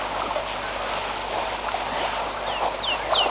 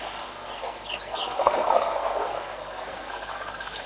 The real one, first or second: first